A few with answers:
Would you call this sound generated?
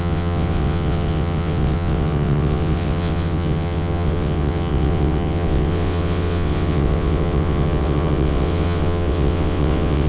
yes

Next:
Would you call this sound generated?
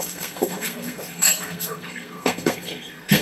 yes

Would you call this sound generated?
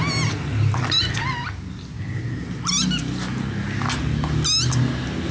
no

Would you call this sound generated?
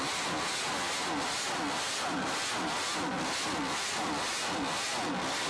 no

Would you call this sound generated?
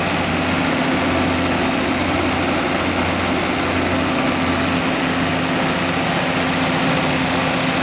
no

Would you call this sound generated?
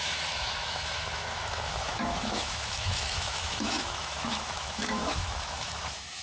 yes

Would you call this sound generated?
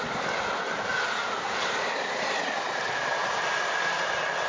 no